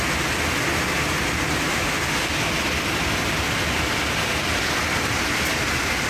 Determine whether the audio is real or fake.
real